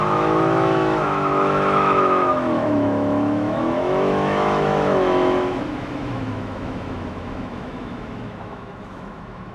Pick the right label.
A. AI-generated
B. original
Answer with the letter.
A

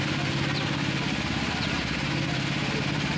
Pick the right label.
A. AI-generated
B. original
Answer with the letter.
B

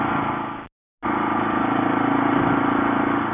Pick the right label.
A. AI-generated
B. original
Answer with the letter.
B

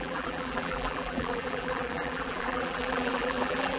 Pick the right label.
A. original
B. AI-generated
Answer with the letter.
B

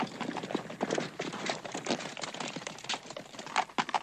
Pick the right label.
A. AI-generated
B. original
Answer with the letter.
B